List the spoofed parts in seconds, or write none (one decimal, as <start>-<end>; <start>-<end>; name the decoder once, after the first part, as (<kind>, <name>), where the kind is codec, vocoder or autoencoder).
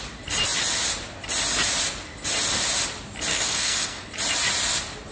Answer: 3.3-4.1 (codec, SNAC)